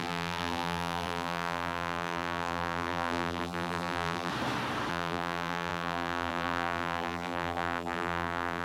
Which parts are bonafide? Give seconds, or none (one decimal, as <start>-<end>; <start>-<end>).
4.3-4.9